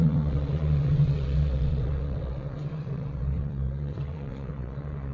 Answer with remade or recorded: remade